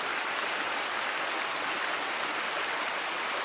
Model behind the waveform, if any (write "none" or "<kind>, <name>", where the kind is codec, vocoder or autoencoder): none